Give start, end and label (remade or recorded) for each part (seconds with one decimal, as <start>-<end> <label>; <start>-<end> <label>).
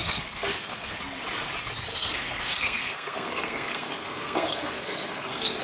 0.0-1.0 remade; 1.0-1.9 recorded; 1.9-5.6 remade